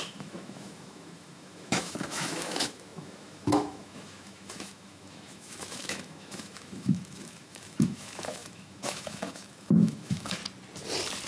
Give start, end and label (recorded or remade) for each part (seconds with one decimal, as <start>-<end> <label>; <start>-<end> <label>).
0.0-10.4 remade; 10.4-11.3 recorded